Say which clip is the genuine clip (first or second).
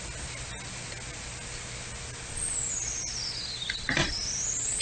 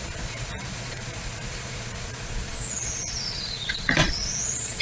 first